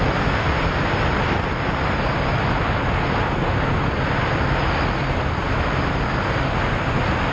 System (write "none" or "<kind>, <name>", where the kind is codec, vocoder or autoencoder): none